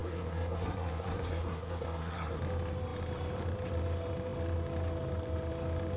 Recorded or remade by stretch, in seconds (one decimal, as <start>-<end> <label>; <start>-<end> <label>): 0.0-2.4 remade; 2.4-6.0 recorded